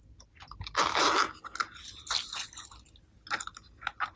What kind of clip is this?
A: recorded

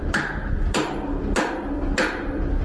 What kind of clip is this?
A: recorded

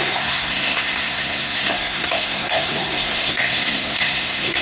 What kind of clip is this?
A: remade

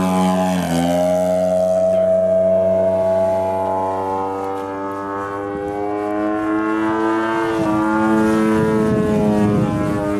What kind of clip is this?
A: recorded